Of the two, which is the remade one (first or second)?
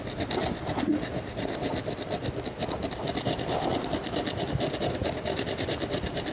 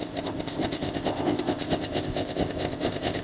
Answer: second